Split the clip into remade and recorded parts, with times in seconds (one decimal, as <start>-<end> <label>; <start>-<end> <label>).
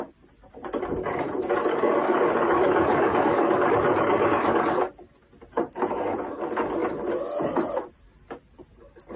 0.0-1.7 recorded; 1.7-4.8 remade; 4.8-9.2 recorded